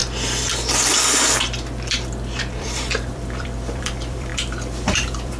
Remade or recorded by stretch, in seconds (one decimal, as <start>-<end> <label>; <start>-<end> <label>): 0.0-2.6 recorded; 2.6-5.4 remade